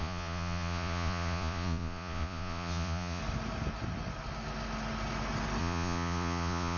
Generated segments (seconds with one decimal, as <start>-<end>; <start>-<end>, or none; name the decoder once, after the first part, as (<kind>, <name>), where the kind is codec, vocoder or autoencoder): 0.0-3.2 (vocoder, Vocos); 5.6-6.8